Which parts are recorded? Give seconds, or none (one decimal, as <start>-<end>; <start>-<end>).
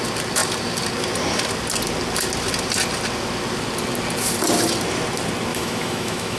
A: 0.0-5.5